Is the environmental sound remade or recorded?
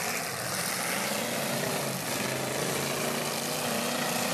recorded